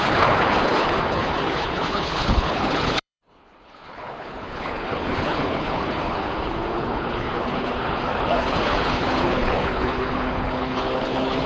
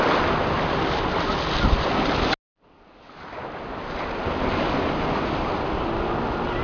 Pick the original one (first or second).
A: second